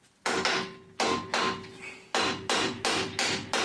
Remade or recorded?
recorded